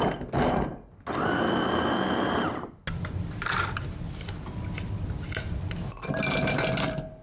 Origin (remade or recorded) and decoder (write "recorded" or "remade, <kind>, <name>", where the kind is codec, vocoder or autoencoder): recorded